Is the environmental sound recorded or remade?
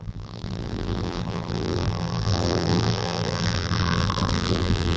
remade